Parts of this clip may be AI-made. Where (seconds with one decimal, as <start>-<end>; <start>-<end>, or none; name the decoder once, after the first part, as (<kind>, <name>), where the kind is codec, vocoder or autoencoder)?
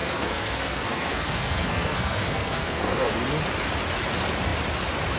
0.0-3.1 (codec, SNAC)